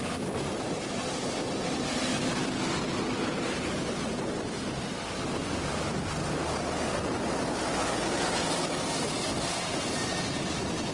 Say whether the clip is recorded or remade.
recorded